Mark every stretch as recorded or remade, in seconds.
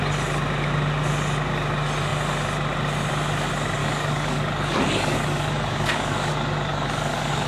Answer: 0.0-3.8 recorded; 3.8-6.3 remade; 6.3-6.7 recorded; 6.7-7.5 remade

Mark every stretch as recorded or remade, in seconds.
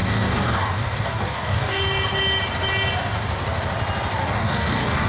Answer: 0.0-1.8 remade; 1.8-4.2 recorded; 4.2-5.1 remade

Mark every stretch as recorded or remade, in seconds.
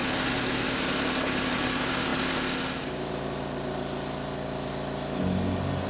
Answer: 0.0-5.9 recorded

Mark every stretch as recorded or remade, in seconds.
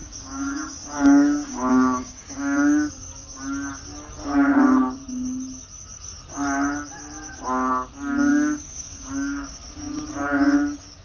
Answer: 0.0-2.9 remade; 2.9-8.3 recorded; 8.3-9.8 remade; 9.8-11.0 recorded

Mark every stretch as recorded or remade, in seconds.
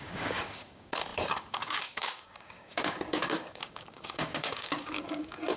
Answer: 0.0-5.6 remade